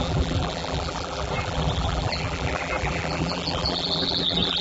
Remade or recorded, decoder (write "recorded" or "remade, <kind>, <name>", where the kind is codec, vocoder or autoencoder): remade, vocoder, BigVGAN v2